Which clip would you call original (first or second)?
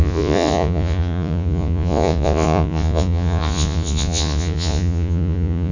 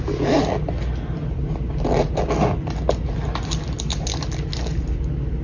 second